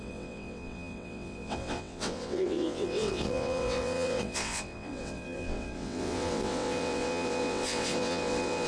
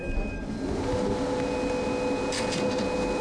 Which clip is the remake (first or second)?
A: first